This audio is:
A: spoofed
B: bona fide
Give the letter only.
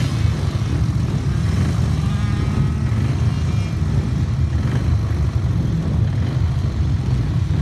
B